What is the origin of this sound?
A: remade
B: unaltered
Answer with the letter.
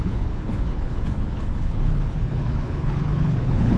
A